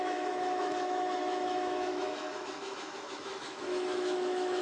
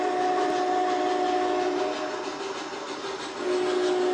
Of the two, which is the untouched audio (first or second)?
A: second